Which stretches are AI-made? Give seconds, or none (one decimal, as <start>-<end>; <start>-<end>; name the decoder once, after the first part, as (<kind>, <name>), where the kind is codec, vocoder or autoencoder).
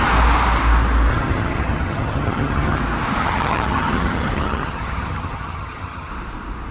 1.1-2.8 (vocoder, HiFi-GAN); 3.2-6.1